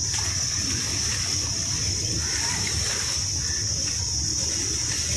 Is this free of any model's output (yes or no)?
yes